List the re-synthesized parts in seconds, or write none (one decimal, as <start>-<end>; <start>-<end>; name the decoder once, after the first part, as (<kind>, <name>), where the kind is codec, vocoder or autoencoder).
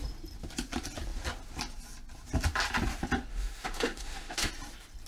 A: 3.3-4.5 (autoencoder, DAC-VAE)